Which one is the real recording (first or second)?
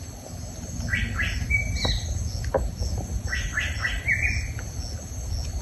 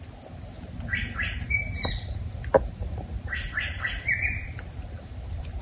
first